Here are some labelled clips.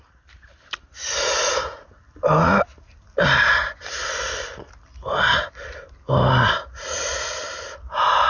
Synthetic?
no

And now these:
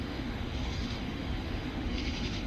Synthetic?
yes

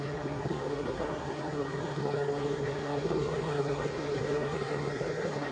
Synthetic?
yes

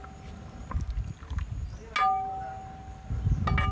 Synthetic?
no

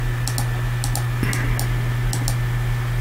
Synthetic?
no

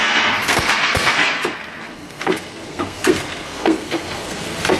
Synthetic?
yes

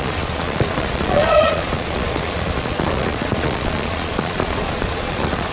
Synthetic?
yes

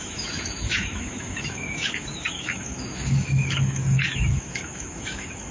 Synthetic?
yes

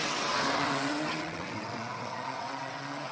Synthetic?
yes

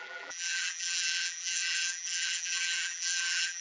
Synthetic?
yes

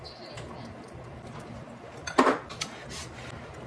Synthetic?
no